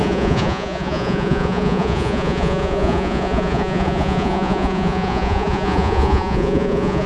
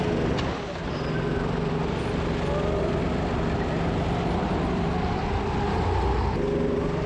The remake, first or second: first